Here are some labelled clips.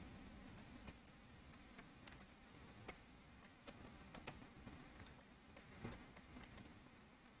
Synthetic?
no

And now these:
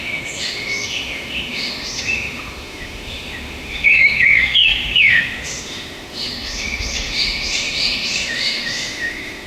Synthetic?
yes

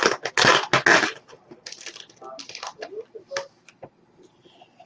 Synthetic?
no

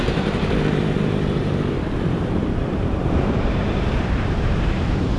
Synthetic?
yes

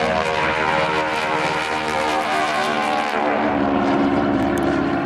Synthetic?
yes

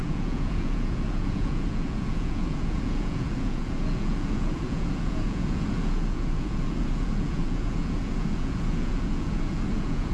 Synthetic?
yes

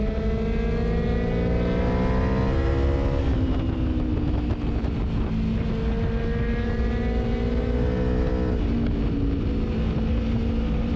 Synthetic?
no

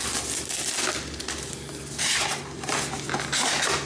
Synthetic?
no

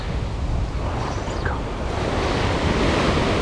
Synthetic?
no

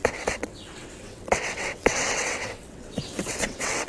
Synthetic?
yes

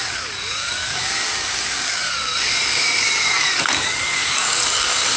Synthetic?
yes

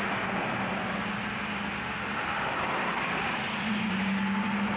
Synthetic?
no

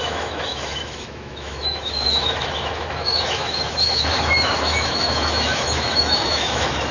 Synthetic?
yes